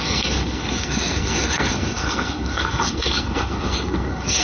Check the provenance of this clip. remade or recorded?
remade